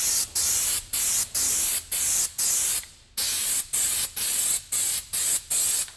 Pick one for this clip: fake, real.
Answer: real